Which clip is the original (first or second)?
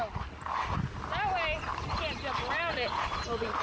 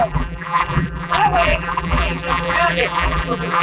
first